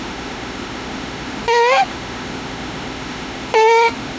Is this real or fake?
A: fake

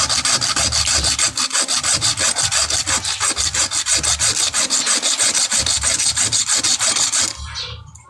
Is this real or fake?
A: real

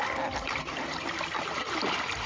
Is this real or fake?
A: real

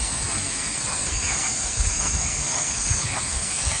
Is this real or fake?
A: fake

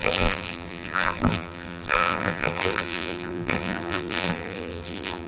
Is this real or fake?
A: fake